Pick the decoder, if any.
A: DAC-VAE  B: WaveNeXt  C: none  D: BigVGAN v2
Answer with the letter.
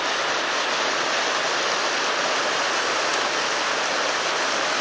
C